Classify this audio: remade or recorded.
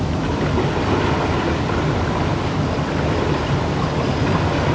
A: recorded